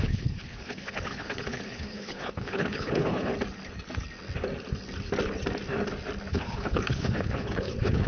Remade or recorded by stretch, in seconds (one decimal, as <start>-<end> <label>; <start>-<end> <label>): 0.0-3.3 remade; 3.3-6.3 recorded; 6.3-8.1 remade